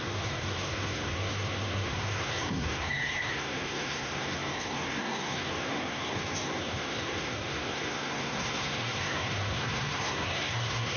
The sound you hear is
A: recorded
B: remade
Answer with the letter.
B